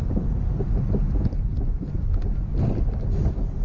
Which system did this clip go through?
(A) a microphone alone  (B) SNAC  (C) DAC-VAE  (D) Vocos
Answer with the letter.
A